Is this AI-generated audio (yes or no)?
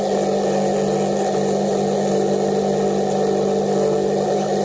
no